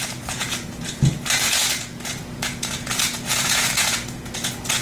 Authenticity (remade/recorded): remade